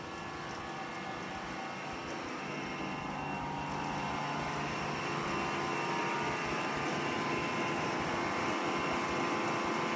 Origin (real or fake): real